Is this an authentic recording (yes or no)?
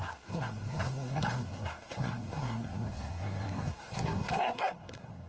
no